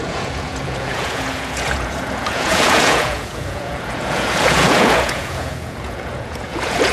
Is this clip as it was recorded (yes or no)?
no